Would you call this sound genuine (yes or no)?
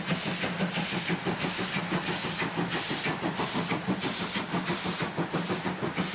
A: yes